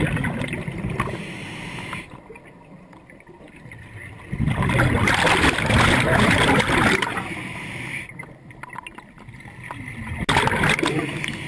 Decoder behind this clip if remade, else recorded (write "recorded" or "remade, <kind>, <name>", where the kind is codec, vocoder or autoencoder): recorded